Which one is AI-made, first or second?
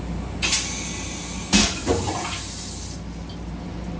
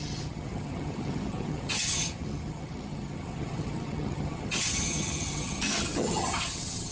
second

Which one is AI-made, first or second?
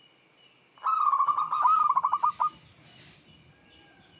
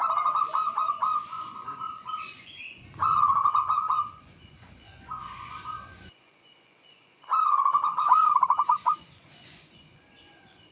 second